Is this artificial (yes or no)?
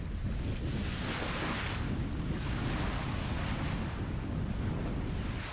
no